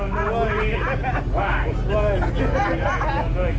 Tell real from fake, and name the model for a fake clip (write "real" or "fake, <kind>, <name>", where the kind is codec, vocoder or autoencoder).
real